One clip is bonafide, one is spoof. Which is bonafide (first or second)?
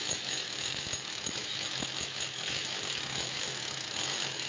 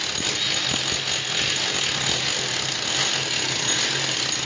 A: second